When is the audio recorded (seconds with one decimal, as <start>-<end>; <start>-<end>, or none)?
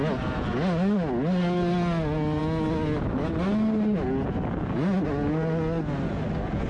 0.0-6.7